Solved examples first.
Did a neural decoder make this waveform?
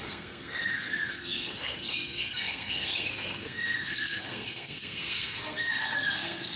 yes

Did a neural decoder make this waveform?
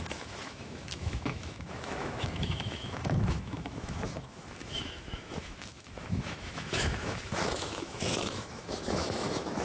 yes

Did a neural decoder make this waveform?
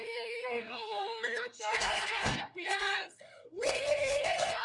yes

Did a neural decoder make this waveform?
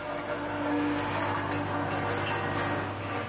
no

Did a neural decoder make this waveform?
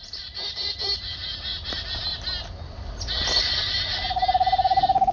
no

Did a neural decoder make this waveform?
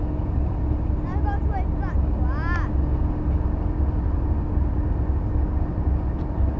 no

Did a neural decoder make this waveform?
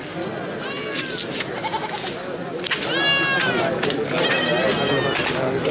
no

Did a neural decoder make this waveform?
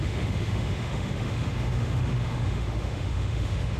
yes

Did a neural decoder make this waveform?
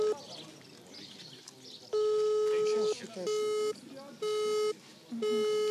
no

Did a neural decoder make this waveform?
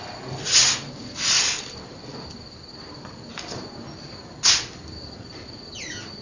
no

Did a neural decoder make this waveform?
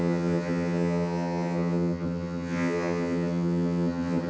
yes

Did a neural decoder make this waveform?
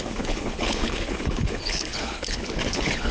yes